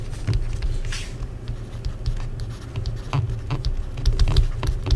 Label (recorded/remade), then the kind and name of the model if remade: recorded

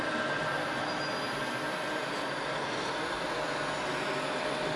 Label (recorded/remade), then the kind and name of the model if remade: recorded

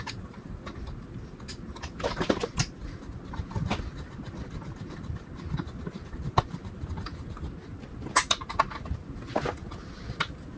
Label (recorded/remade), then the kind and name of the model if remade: recorded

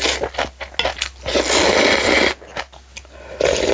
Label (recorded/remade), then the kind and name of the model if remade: recorded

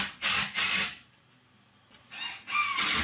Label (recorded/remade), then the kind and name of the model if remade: recorded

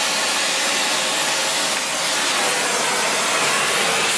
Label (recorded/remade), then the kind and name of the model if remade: recorded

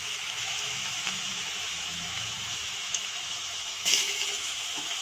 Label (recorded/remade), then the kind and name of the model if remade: remade, autoencoder, DAC-VAE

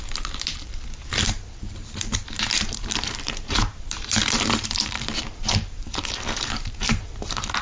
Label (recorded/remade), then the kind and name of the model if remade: remade, vocoder, BigVGAN v2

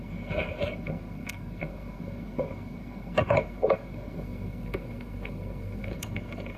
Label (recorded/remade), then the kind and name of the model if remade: remade, codec, SNAC